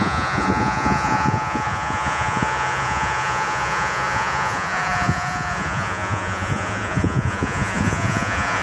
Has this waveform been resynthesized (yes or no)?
yes